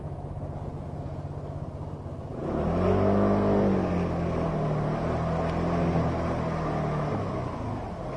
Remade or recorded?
recorded